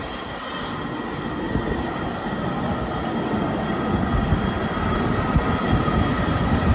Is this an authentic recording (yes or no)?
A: yes